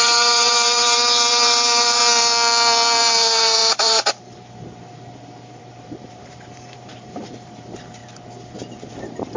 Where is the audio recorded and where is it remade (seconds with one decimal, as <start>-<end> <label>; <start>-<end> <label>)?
0.0-2.0 remade; 2.0-3.0 recorded; 3.0-8.0 remade; 8.0-8.9 recorded; 8.9-9.4 remade